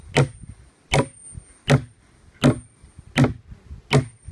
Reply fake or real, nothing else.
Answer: real